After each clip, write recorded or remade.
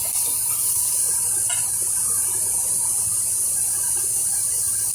recorded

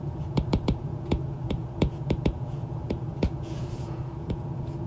remade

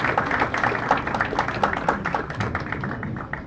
recorded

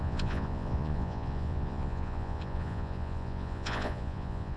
remade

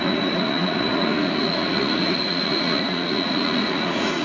remade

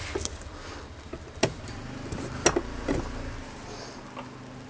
recorded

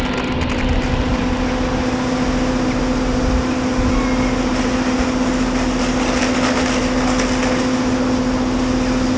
recorded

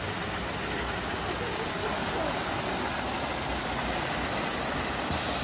recorded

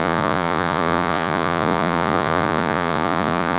remade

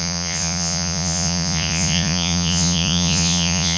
remade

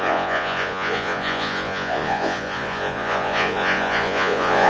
remade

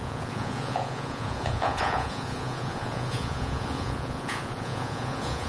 remade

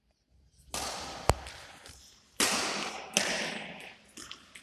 recorded